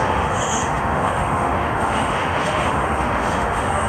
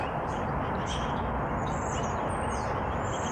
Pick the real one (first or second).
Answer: second